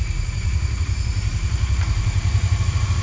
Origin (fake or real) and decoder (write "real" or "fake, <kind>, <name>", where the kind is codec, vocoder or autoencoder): fake, vocoder, Vocos